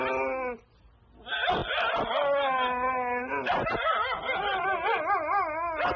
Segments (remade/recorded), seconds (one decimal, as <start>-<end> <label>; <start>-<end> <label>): 0.0-6.0 recorded